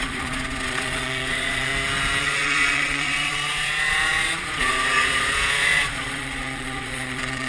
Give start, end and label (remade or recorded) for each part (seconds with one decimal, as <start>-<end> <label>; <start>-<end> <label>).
0.0-1.7 remade; 1.7-2.2 recorded; 2.2-7.5 remade